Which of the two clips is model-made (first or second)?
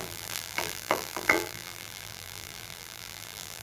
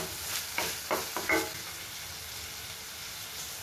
first